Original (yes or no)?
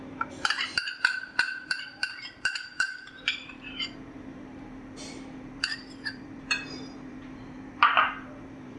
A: no